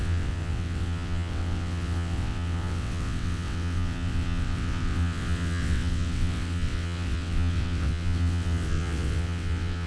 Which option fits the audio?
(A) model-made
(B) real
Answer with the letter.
A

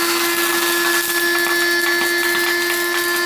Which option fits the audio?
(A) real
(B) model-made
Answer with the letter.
A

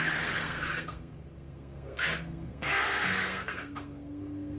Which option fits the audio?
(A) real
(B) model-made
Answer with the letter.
B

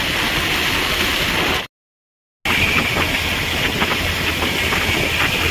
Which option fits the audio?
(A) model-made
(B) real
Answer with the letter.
B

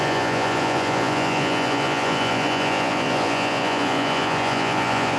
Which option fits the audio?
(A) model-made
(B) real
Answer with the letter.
A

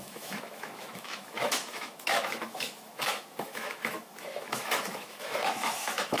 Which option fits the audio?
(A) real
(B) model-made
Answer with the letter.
B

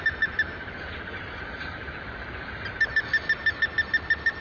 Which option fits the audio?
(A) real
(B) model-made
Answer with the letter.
A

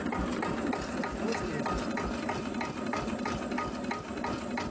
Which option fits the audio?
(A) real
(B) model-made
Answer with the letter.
A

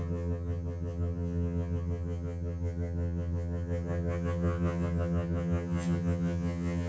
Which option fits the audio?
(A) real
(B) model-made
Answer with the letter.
B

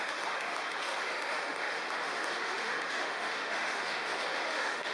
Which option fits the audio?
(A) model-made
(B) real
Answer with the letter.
A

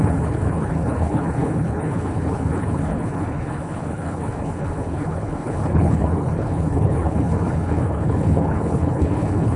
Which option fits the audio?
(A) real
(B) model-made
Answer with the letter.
B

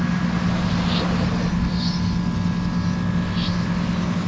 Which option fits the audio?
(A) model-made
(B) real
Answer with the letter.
B